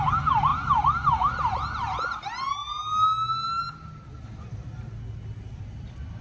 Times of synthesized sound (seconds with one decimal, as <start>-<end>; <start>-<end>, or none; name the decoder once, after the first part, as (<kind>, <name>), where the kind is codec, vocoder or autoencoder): none